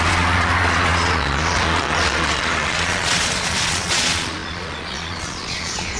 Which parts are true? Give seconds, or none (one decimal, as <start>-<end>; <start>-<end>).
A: none